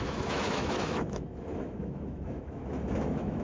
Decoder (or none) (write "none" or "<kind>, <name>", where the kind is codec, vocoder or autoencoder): autoencoder, DAC-VAE